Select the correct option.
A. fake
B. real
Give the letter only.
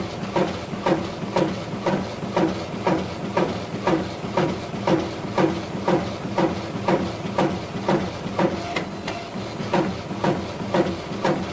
B